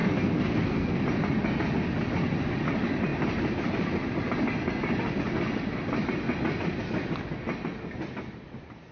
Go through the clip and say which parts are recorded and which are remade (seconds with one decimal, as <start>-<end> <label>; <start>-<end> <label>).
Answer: 0.0-1.0 remade; 1.0-8.9 recorded

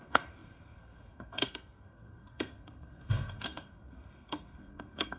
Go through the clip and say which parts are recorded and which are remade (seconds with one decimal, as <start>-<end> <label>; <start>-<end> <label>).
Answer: 0.0-5.2 remade

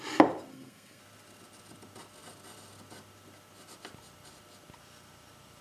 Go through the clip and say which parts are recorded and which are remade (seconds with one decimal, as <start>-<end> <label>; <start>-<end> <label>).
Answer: 0.0-0.5 recorded; 0.5-1.0 remade; 1.0-5.6 recorded

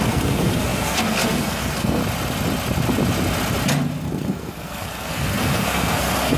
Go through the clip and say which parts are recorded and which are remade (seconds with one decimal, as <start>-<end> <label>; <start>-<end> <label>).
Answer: 0.0-2.0 remade; 2.0-4.0 recorded; 4.0-6.4 remade

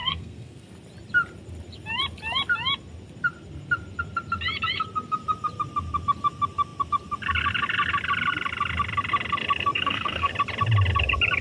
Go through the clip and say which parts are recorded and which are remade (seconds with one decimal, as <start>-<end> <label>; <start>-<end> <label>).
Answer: 0.0-0.7 remade; 0.7-9.7 recorded; 9.7-10.3 remade; 10.3-11.4 recorded

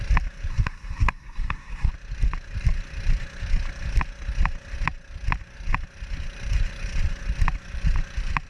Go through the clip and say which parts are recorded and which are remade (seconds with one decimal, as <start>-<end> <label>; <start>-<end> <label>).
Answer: 0.0-0.5 recorded; 0.5-1.9 remade; 1.9-8.5 recorded

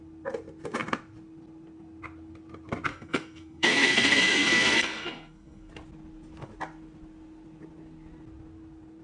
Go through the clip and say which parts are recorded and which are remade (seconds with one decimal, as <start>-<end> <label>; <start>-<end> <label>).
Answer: 0.0-2.9 recorded; 2.9-5.7 remade; 5.7-9.0 recorded

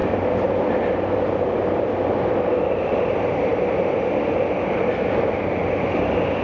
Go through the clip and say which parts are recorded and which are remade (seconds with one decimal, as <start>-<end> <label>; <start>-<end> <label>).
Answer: 0.0-6.4 recorded